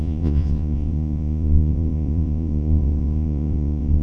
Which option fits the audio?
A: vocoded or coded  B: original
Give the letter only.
A